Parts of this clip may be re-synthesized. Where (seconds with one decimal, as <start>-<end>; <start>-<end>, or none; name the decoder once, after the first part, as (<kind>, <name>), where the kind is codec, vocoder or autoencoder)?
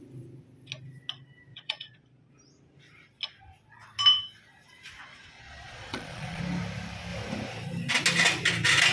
1.5-2.3 (vocoder, Vocos); 5.0-6.4